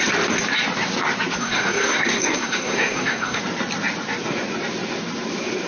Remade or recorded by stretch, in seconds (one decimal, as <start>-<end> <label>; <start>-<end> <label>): 0.0-1.4 recorded; 1.4-3.4 remade; 3.4-5.7 recorded